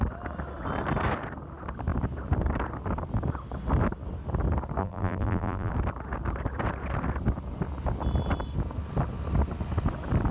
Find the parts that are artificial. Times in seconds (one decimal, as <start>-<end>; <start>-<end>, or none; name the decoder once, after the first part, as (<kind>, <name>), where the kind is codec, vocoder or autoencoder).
4.8-5.7 (vocoder, BigVGAN v2)